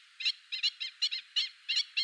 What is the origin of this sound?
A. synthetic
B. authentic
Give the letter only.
B